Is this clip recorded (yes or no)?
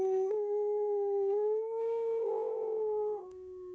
no